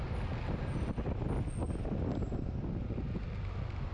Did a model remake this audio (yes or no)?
no